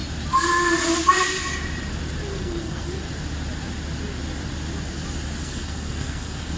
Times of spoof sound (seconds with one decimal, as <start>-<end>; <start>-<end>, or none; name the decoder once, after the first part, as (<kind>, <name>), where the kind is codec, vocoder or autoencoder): 2.3-3.0 (codec, SNAC); 5.4-6.6